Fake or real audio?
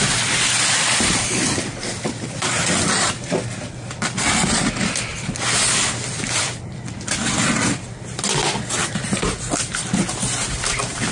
real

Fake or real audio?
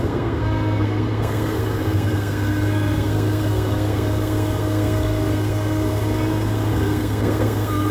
fake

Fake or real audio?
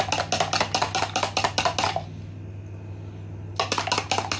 real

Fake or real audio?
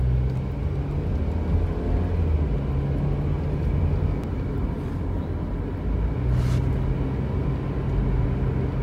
real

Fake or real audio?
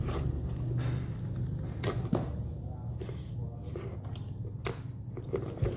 real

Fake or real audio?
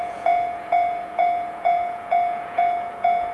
fake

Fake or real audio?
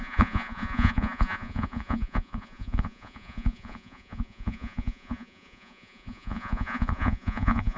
fake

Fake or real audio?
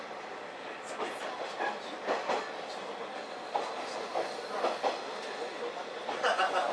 real